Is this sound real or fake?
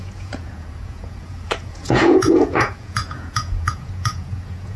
fake